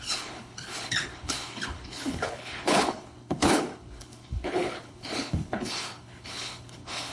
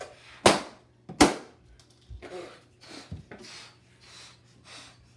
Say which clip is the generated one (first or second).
first